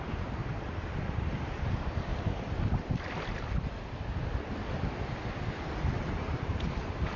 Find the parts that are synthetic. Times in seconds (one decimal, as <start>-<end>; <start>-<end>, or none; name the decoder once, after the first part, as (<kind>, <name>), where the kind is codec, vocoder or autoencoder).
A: 0.0-2.1 (vocoder, BigVGAN v2); 6.0-7.2